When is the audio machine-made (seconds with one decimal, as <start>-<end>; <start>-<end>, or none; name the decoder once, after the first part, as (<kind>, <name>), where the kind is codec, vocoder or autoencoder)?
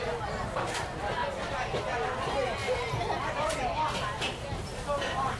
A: none